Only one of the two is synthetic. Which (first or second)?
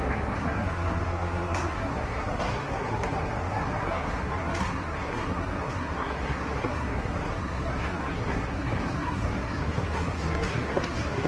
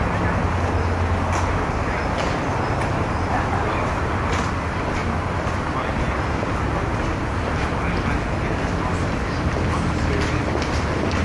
first